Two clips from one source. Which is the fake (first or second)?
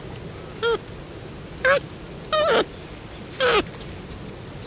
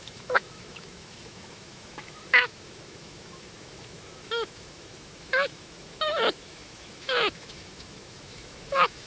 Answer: second